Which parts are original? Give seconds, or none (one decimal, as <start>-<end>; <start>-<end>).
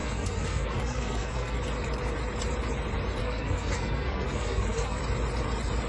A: 1.6-3.2; 5.0-5.9